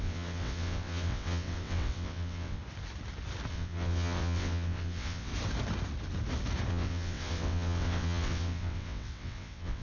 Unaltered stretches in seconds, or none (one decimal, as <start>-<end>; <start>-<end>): 2.6-3.5; 5.3-6.7